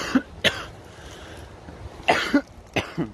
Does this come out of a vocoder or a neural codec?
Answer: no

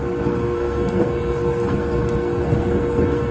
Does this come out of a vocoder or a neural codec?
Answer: yes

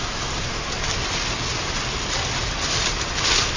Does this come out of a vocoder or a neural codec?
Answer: no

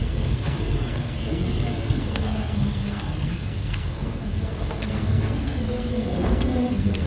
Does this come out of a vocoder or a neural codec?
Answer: yes